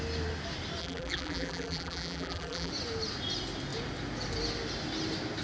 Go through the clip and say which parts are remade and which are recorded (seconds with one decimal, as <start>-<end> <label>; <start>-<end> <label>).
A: 0.0-0.8 recorded; 0.8-2.7 remade; 2.7-5.4 recorded